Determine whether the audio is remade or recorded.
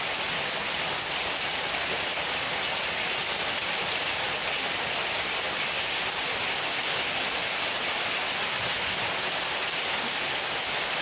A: recorded